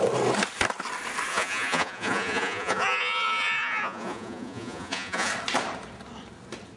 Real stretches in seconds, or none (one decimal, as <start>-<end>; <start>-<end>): 0.0-1.3; 5.3-6.8